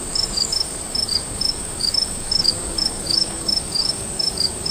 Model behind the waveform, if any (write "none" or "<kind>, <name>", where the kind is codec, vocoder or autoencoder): codec, DAC